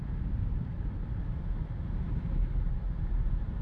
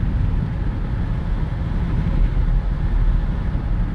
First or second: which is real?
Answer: second